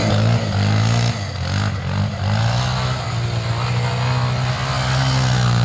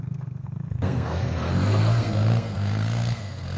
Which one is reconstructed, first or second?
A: second